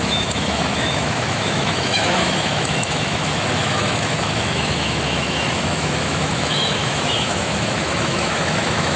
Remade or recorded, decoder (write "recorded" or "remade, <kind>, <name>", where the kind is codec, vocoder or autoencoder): remade, autoencoder, DAC-VAE